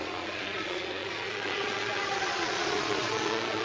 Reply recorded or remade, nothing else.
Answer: remade